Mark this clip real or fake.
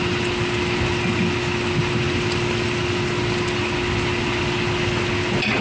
real